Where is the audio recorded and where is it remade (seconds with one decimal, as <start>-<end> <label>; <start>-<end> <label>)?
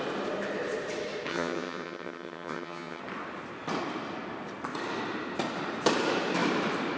0.0-1.3 recorded; 1.3-3.0 remade; 3.0-7.0 recorded